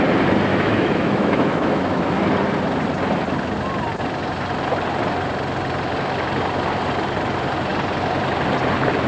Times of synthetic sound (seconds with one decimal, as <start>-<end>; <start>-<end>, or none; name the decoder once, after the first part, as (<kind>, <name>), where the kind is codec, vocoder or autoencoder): 0.5-2.2 (autoencoder, DAC-VAE)